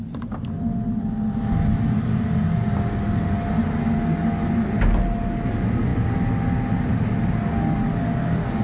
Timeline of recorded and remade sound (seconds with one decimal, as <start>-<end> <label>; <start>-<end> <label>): 0.0-8.6 recorded